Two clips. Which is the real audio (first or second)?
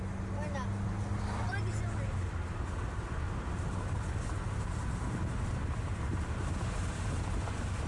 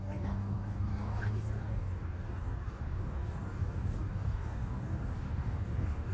first